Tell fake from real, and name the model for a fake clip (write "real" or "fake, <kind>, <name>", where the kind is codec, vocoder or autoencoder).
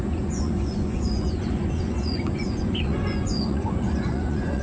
fake, vocoder, Vocos